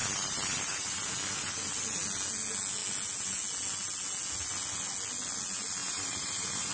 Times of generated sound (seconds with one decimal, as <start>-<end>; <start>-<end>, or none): 0.0-1.0; 5.8-6.7